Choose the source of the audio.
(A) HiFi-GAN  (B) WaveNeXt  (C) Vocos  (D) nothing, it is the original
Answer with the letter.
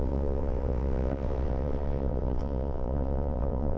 B